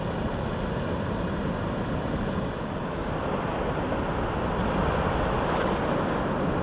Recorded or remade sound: recorded